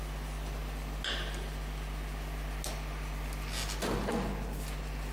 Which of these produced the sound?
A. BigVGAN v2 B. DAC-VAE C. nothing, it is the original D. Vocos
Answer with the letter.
C